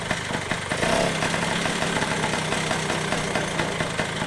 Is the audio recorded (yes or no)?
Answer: yes